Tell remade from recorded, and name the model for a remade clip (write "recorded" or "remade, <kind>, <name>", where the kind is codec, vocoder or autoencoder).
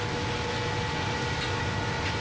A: recorded